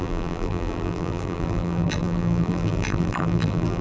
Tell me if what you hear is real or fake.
fake